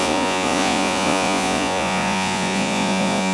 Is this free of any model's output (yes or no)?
no